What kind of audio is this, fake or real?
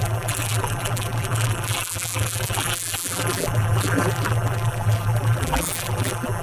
fake